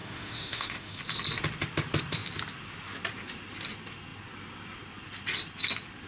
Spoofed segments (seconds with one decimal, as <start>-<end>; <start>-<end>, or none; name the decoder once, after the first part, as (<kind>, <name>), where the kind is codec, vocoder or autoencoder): 0.0-1.0 (autoencoder, DAC-VAE)